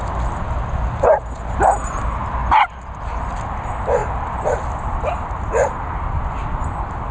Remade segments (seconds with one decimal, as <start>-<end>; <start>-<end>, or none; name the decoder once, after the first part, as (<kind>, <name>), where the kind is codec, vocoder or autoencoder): none